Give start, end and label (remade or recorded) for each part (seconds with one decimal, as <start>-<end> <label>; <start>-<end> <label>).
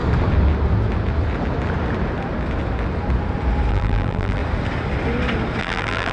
0.0-3.7 recorded; 3.7-4.4 remade; 4.4-5.6 recorded; 5.6-6.1 remade